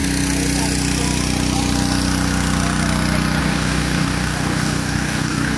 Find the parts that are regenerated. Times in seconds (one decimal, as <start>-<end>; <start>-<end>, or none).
3.4-5.6